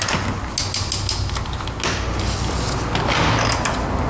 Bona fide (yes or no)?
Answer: yes